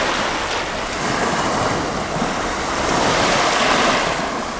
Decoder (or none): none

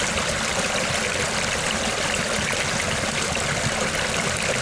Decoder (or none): none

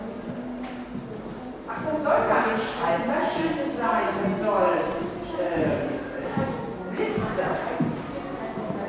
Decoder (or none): none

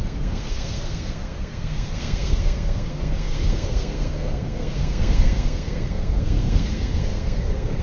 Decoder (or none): codec, SNAC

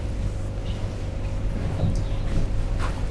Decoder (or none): none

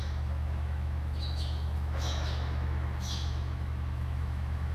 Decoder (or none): autoencoder, DAC-VAE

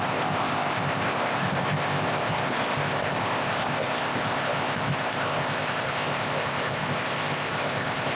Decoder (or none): codec, ZipCodec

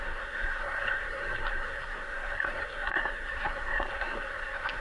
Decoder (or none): codec, SNAC